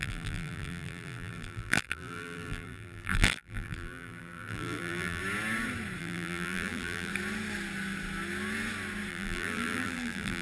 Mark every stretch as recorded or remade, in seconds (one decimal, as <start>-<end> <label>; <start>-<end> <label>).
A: 0.0-5.2 remade; 5.2-6.0 recorded; 6.0-7.1 remade; 7.1-9.1 recorded; 9.1-10.4 remade